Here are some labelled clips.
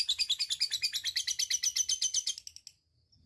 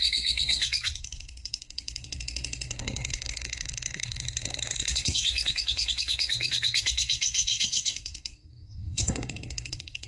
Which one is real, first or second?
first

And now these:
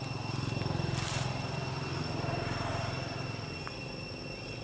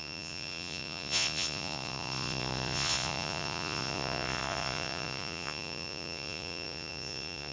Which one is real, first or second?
first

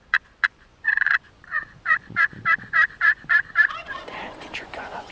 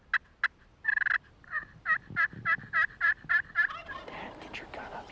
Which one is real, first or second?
second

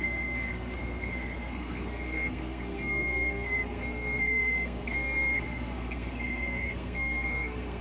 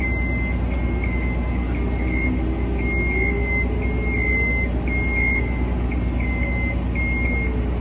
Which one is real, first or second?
second